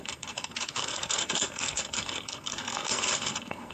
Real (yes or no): no